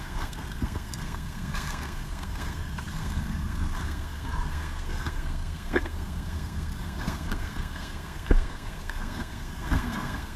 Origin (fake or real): fake